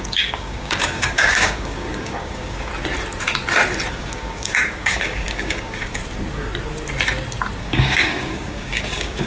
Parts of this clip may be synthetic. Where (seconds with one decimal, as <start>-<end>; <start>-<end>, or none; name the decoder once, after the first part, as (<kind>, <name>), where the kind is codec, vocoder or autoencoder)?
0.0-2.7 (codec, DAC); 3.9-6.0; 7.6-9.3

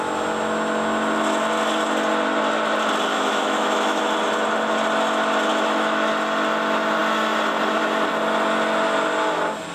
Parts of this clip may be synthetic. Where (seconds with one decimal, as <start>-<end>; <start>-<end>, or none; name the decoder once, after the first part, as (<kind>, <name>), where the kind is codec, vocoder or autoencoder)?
3.1-4.0 (autoencoder, DAC-VAE); 5.5-6.1

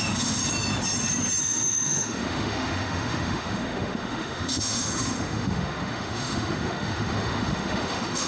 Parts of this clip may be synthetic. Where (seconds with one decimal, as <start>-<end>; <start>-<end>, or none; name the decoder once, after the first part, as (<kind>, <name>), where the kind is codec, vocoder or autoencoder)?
0.0-0.4 (autoencoder, DAC-VAE); 1.4-8.3

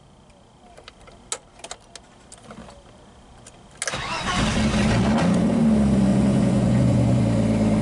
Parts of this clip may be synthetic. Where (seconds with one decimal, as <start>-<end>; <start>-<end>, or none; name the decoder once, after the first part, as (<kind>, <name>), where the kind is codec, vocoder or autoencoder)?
6.1-7.2 (vocoder, Vocos)

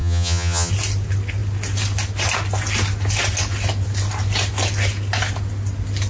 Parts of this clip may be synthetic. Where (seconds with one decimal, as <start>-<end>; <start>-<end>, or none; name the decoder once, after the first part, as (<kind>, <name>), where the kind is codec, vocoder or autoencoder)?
0.0-0.7 (vocoder, HiFi-GAN)

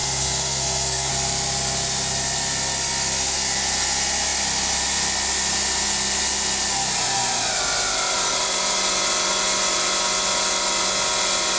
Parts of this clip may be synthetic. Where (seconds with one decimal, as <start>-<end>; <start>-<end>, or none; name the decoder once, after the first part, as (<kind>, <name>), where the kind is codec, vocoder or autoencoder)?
0.0-1.1 (codec, SNAC)

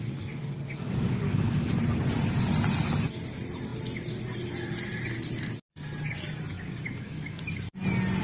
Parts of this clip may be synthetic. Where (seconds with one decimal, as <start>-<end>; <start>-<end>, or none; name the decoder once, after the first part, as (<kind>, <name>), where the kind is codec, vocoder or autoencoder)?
0.8-1.7 (codec, DAC); 6.5-7.4

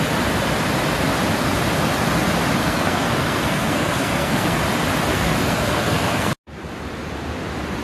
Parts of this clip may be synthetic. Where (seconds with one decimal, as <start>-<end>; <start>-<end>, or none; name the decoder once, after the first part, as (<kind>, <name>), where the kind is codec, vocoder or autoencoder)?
2.6-4.6 (codec, SNAC); 5.1-6.3